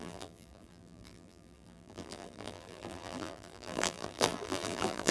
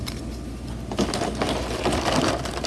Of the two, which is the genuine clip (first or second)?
second